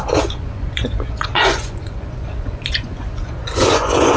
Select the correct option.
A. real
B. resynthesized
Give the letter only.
B